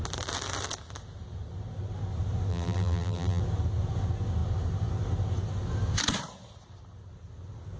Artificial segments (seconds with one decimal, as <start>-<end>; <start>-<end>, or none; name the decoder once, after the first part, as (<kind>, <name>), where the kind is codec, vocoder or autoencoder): 2.5-3.4 (vocoder, BigVGAN v2)